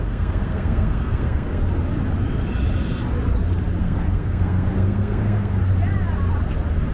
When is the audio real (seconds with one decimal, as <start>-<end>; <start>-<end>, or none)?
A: 1.6-3.8; 5.6-6.9